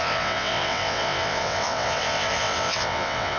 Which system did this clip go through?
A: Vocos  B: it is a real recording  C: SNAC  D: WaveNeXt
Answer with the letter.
D